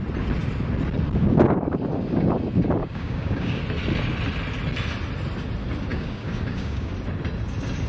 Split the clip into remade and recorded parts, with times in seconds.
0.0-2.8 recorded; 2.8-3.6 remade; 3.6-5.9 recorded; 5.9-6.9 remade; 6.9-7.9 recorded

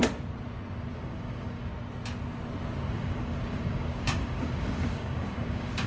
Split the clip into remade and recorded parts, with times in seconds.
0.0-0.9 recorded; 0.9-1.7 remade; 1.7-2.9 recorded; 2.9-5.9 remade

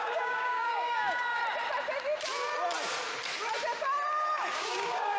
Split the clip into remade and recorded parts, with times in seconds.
0.0-1.4 remade; 1.4-4.5 recorded; 4.5-5.2 remade

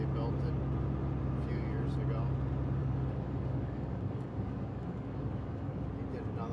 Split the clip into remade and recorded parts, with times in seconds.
0.0-2.8 recorded; 2.8-5.9 remade; 5.9-6.5 recorded

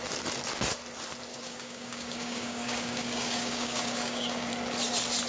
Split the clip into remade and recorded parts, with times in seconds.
0.0-1.3 recorded; 1.3-4.5 remade; 4.5-5.3 recorded